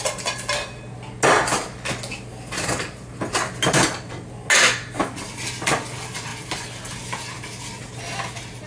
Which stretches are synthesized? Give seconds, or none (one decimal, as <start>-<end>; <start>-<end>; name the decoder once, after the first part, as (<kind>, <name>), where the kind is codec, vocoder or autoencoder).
none